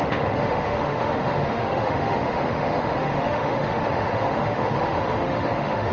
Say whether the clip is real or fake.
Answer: fake